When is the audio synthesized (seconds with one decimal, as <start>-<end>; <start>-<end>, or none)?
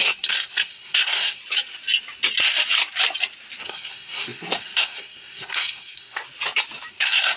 0.0-1.4; 3.6-6.2; 6.9-7.4